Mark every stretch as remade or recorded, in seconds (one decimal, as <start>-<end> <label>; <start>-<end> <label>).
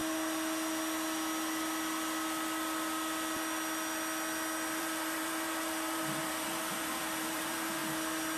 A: 0.0-4.8 recorded; 4.8-7.8 remade; 7.8-8.4 recorded